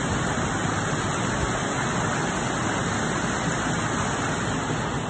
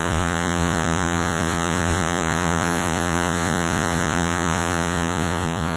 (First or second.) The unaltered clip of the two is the first